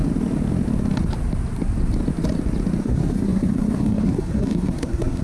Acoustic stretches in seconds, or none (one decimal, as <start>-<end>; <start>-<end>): 0.0-2.8